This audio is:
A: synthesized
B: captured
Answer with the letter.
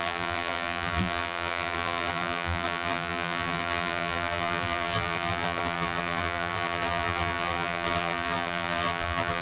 A